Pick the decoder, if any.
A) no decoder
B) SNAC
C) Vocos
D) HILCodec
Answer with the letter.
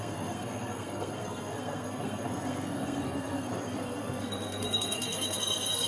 B